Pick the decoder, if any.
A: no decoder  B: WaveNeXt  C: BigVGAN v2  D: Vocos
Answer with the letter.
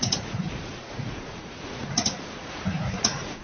D